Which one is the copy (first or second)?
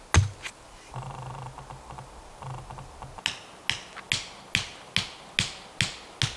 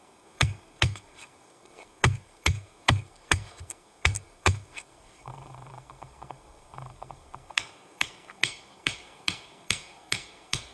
second